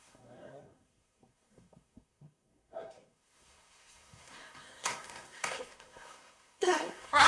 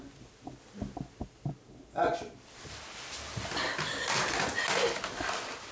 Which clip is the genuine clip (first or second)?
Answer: second